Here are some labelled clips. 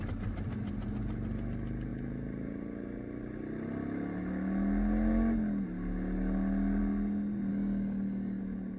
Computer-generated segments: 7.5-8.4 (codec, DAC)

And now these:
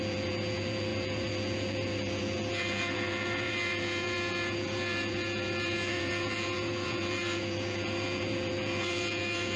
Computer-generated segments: 0.0-9.6 (vocoder, Vocos)

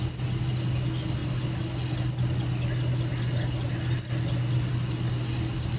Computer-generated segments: none

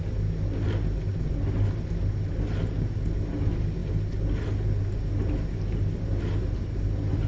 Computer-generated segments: none

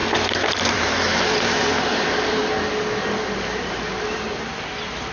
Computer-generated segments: 0.5-2.4 (vocoder, BigVGAN v2); 3.5-5.1

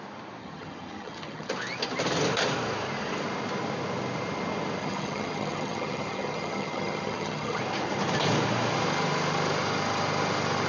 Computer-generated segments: 0.4-1.5 (vocoder, HiFi-GAN); 4.8-7.6

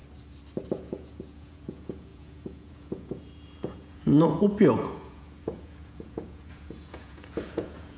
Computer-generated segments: 0.7-8.0 (vocoder, Vocos)